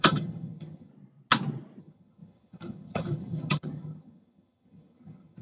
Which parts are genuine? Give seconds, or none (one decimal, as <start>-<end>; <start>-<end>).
0.9-1.8